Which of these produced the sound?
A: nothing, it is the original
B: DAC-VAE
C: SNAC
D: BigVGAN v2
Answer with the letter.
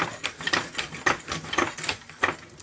A